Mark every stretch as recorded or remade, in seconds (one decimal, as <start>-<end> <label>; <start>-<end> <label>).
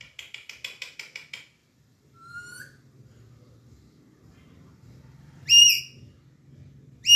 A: 0.0-1.6 recorded; 1.6-5.8 remade; 5.8-7.2 recorded